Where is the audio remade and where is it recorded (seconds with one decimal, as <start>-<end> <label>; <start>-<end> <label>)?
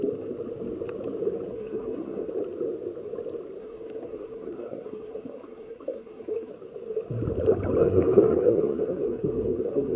0.0-1.5 recorded; 1.5-2.3 remade; 2.3-3.6 recorded; 3.6-6.5 remade; 6.5-7.8 recorded; 7.8-10.0 remade